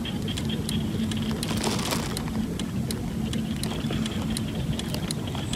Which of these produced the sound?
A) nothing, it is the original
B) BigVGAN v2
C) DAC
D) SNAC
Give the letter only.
A